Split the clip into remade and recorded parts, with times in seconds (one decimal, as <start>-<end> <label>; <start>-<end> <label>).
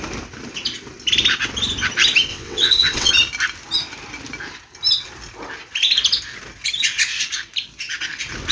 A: 0.0-2.3 recorded; 2.3-3.1 remade; 3.1-8.5 recorded